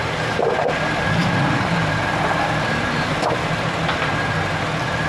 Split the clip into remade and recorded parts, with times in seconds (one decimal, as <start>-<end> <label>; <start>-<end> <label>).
0.0-5.1 recorded